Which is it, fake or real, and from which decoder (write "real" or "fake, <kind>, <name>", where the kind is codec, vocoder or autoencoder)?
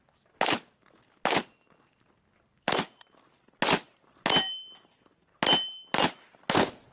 real